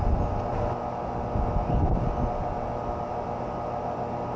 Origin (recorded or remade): recorded